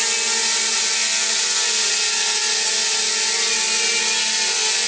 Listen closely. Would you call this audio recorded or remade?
recorded